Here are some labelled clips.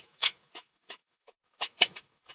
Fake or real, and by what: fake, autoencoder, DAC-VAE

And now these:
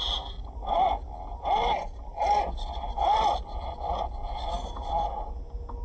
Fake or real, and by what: real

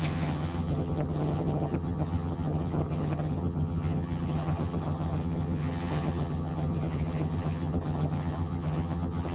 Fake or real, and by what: fake, vocoder, HiFi-GAN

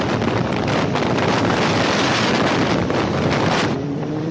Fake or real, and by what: fake, vocoder, BigVGAN v2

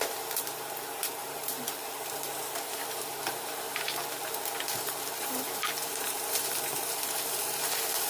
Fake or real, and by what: fake, vocoder, BigVGAN v2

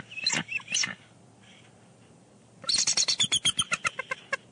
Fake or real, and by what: fake, vocoder, BigVGAN v2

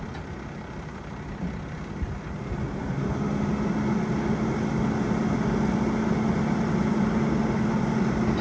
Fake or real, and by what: real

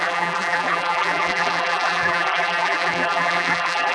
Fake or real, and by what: fake, vocoder, BigVGAN v2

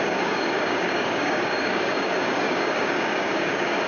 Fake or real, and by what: fake, codec, DAC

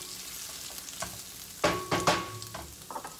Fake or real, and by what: real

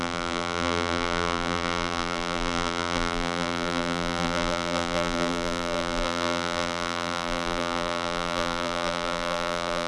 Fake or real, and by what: fake, vocoder, BigVGAN v2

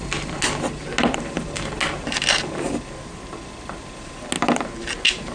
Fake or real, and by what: real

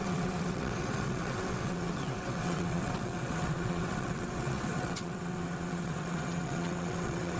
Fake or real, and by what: fake, vocoder, WaveNeXt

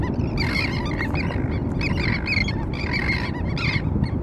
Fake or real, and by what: real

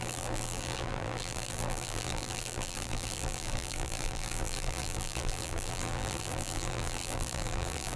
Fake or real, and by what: fake, vocoder, BigVGAN v2